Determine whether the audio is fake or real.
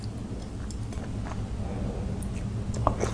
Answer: real